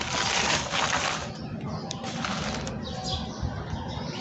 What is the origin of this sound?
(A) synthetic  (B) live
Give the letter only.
B